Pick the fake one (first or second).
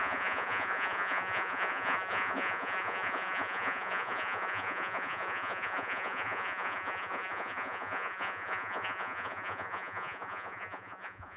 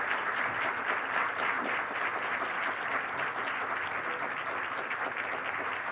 first